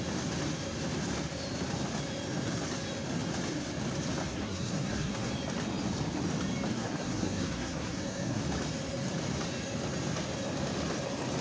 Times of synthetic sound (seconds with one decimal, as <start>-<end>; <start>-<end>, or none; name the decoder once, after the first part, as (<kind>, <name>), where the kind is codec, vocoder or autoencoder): 4.3-5.3 (codec, SNAC); 6.7-8.4